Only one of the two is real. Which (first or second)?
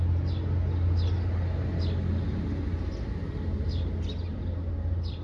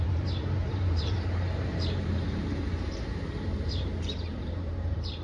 first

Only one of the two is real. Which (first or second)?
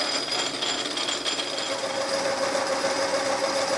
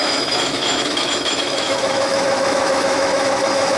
first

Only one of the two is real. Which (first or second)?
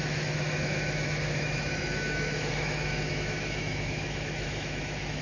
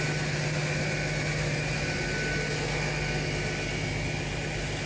second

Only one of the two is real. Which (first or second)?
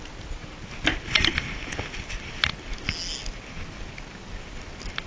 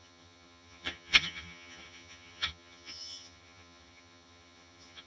first